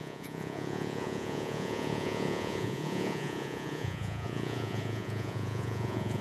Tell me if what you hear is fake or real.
fake